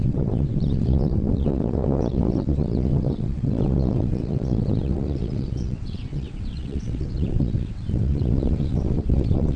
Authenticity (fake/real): fake